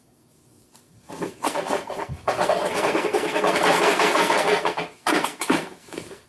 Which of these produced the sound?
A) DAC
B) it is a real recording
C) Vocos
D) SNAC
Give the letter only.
D